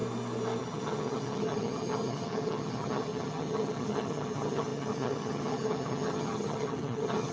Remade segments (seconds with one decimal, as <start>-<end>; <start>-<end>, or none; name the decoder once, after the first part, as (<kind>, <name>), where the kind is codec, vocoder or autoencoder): 0.6-7.3 (vocoder, HiFi-GAN)